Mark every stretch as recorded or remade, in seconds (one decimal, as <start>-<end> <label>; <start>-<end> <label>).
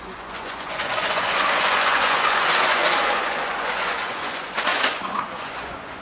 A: 0.0-6.0 remade